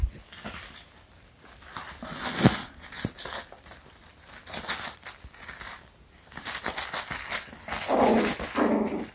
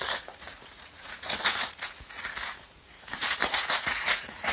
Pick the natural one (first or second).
first